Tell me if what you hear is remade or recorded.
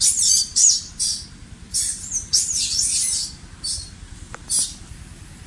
remade